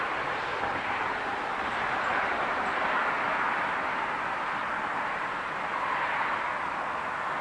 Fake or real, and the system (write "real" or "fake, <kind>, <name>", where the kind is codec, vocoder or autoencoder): real